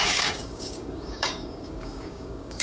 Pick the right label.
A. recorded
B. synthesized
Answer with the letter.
B